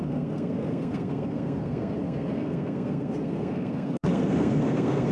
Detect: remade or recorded remade